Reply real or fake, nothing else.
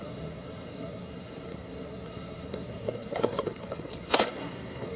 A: fake